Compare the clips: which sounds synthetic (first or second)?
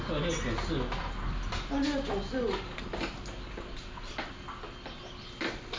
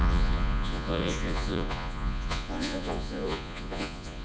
second